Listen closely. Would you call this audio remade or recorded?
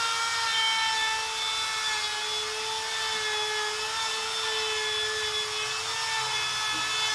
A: recorded